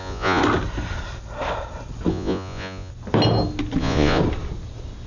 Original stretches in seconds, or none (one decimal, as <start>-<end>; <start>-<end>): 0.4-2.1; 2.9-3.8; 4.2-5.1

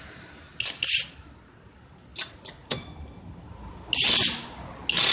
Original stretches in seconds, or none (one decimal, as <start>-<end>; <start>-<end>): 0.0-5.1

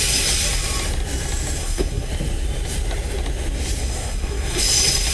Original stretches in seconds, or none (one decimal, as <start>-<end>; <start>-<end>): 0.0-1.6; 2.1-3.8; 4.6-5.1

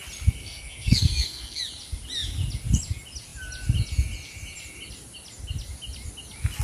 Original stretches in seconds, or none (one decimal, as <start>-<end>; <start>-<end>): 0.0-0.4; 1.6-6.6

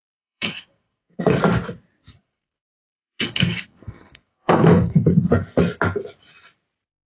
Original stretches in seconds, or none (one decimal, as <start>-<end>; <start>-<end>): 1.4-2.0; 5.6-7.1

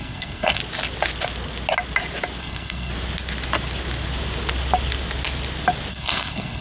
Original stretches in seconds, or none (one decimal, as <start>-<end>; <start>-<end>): 0.6-2.4; 2.9-5.9